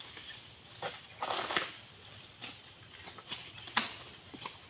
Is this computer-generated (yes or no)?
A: no